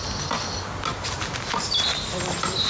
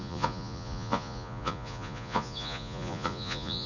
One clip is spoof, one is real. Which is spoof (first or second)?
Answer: second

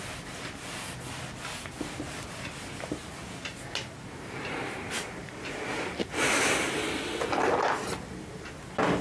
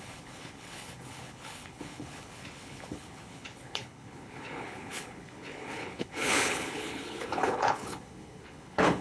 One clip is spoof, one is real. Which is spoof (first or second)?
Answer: second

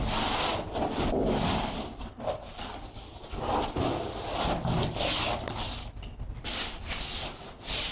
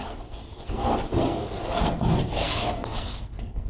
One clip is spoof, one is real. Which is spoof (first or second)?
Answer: second